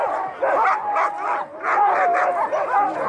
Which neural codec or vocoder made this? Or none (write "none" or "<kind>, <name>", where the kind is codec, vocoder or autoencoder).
none